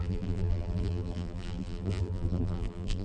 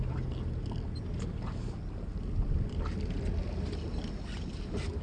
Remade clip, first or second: first